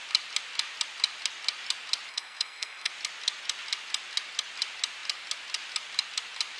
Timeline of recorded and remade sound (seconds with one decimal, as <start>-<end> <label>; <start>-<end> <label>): 0.0-2.1 recorded; 2.1-2.9 remade; 2.9-6.6 recorded